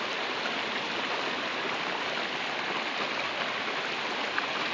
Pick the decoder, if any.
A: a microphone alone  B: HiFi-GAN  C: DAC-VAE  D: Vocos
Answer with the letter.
A